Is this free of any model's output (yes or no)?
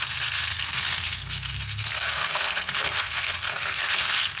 no